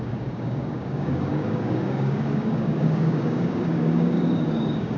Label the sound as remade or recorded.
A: remade